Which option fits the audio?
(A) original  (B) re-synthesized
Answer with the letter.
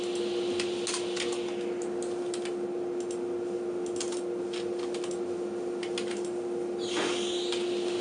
A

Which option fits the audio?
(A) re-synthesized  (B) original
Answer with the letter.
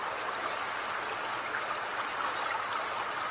B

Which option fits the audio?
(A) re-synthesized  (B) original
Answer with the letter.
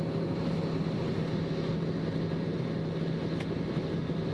B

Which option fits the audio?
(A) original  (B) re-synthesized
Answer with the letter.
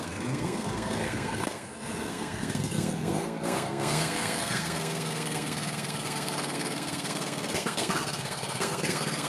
B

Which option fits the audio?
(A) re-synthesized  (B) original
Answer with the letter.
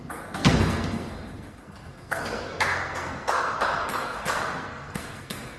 A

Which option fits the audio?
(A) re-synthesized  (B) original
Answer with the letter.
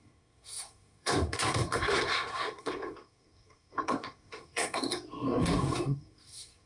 A